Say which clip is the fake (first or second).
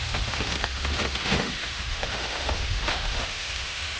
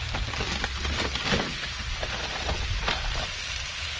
first